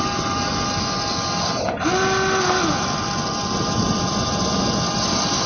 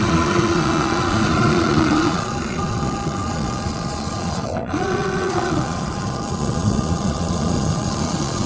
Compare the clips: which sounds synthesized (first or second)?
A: second